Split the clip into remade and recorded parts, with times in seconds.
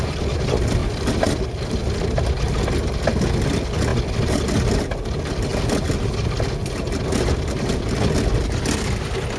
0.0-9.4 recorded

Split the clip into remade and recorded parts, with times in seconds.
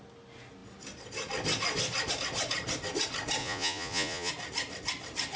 0.0-3.4 recorded; 3.4-4.3 remade; 4.3-5.4 recorded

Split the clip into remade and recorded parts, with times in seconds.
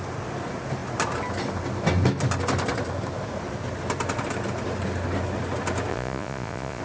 0.0-5.9 recorded; 5.9-6.8 remade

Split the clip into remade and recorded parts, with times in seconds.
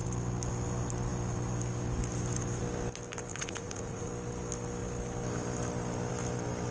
0.0-3.3 recorded; 3.3-4.1 remade; 4.1-6.7 recorded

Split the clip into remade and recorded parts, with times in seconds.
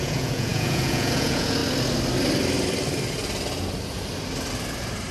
0.0-1.6 remade; 1.6-5.1 recorded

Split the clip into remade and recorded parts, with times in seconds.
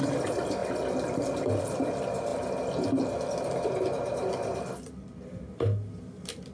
0.0-6.5 recorded